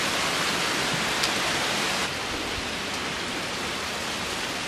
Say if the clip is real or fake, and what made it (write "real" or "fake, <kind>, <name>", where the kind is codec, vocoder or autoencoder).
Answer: real